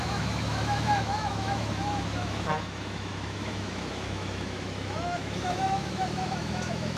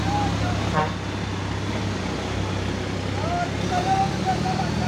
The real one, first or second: second